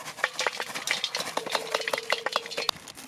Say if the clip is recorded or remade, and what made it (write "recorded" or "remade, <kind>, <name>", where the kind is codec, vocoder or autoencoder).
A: recorded